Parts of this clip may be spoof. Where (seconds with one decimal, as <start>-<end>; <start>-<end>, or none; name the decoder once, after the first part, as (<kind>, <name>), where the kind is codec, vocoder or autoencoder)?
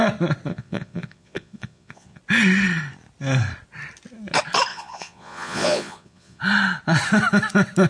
0.5-2.2 (vocoder, Vocos); 4.7-6.4